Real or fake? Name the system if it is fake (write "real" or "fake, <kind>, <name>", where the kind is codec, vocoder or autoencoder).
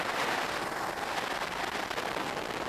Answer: real